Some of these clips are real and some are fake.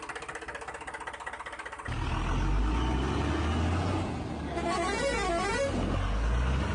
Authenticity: real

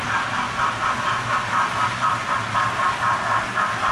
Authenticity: real